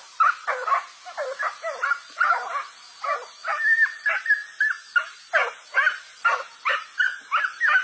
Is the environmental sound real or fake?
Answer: real